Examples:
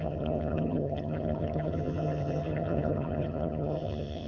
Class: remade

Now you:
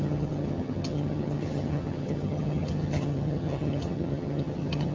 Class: remade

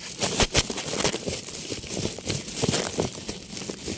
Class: recorded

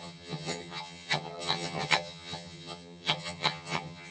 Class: remade